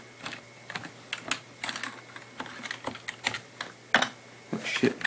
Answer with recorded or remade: recorded